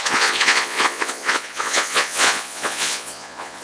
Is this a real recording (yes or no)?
no